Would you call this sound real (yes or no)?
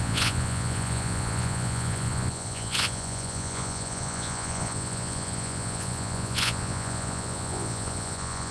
no